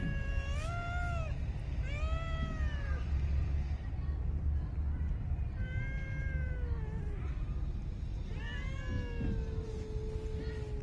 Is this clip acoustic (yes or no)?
yes